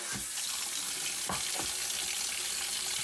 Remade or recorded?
recorded